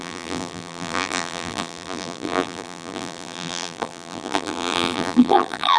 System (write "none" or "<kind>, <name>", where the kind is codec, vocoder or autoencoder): vocoder, BigVGAN v2